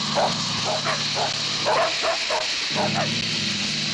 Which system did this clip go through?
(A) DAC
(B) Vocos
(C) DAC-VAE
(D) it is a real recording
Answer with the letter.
D